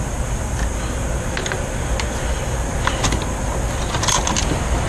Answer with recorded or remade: recorded